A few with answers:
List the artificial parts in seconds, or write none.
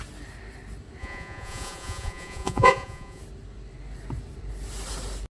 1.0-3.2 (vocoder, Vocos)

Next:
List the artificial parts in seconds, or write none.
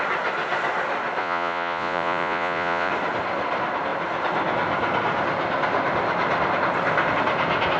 1.2-2.9 (vocoder, Vocos)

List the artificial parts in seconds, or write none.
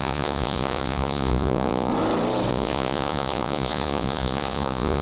0.0-1.9 (vocoder, Vocos); 2.5-5.0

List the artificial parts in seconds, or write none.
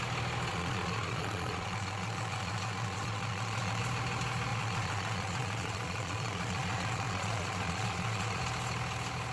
0.5-3.8 (vocoder, Vocos); 4.5-8.4